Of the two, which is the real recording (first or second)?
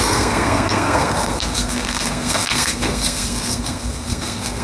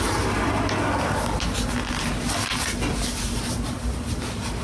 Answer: second